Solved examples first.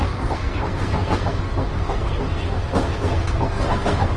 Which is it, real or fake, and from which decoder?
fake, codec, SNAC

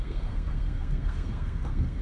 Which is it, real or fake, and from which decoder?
fake, codec, SNAC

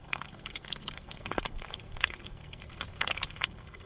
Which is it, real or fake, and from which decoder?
fake, codec, SNAC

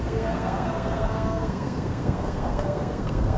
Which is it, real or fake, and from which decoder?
fake, codec, SNAC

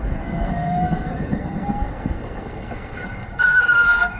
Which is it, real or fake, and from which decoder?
fake, codec, SNAC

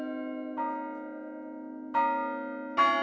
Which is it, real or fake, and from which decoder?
real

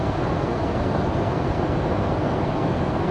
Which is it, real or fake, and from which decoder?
fake, codec, SNAC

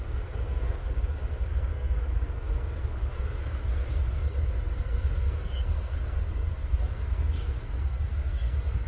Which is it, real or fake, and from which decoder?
fake, codec, SNAC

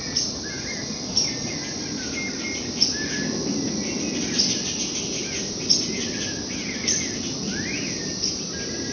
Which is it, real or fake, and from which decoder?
real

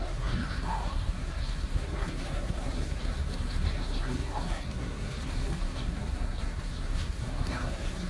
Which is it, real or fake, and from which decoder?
fake, codec, SNAC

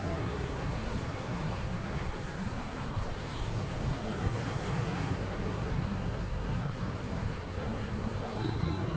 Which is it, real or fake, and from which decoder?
fake, codec, SNAC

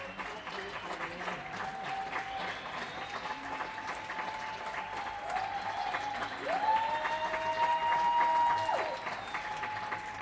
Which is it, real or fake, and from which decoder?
real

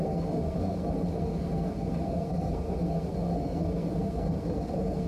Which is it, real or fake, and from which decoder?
fake, codec, SNAC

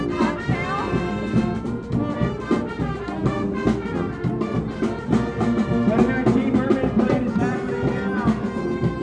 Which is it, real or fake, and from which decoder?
real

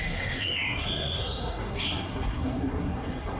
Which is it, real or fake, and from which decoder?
fake, codec, SNAC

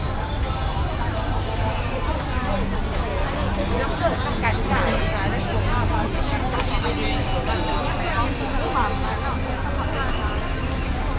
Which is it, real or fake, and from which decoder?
real